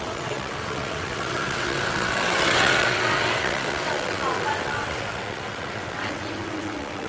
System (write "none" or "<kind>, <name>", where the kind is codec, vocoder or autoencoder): vocoder, WaveNeXt